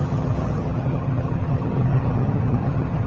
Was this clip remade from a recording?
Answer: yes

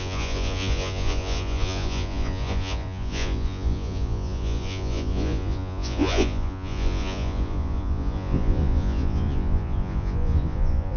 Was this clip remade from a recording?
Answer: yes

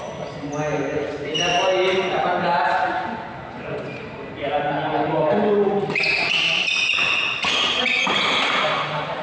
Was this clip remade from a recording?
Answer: no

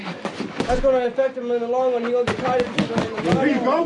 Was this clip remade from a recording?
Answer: no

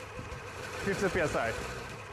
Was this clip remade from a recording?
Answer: yes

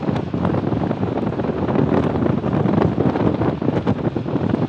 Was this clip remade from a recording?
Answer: no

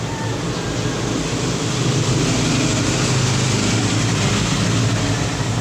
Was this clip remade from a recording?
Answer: no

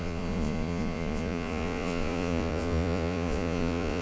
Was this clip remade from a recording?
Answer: yes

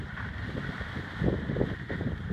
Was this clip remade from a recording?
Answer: no